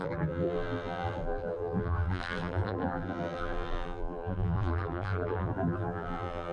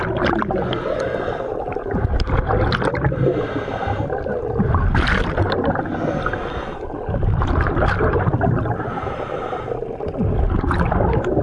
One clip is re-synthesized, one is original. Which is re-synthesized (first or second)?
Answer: first